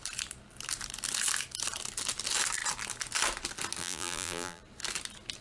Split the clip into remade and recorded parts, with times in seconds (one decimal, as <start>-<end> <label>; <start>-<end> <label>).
0.0-3.8 recorded; 3.8-4.6 remade; 4.6-5.4 recorded